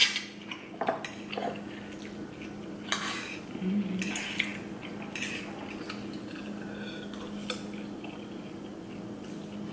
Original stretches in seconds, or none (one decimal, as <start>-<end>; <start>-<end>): 0.0-9.7